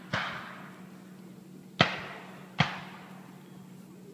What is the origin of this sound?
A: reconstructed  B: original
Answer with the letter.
B